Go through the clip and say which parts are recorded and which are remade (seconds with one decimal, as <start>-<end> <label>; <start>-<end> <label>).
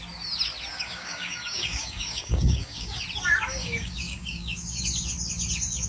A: 0.0-0.7 recorded; 0.7-3.0 remade; 3.0-3.6 recorded; 3.6-4.8 remade; 4.8-5.9 recorded